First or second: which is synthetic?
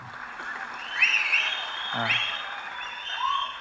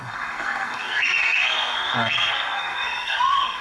second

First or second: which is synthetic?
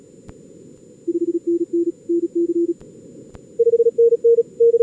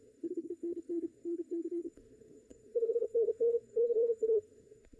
second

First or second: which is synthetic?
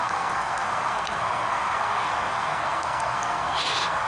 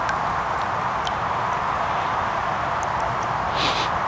first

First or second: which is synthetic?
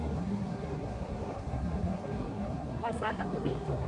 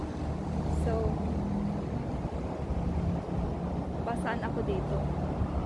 first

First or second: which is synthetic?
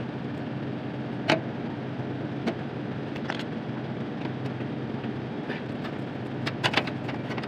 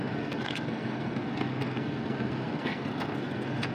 second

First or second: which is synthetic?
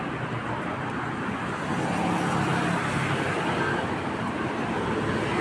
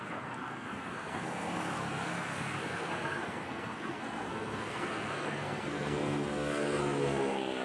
second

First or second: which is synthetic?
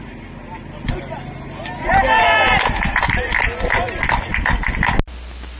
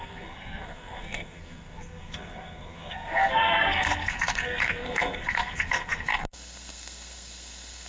second